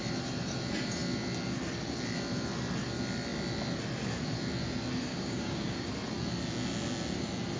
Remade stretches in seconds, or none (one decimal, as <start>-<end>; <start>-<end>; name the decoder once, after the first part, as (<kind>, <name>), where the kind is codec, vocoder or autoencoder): 5.1-5.9 (codec, DAC)